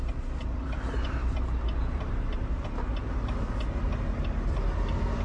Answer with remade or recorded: recorded